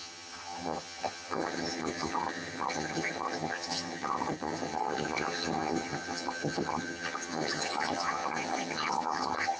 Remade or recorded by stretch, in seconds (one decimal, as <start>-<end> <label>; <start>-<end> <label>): 0.0-9.6 remade